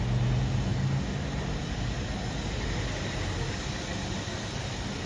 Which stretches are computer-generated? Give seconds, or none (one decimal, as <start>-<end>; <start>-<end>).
none